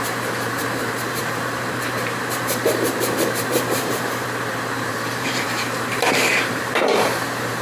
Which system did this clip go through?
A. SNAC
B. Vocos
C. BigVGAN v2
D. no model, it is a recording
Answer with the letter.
C